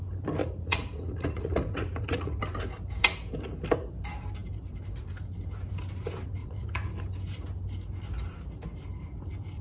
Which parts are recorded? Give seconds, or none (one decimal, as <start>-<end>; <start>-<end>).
0.0-0.4; 2.4-6.4; 6.9-9.6